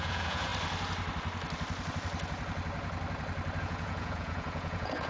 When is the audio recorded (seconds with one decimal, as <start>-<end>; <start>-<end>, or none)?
0.5-3.6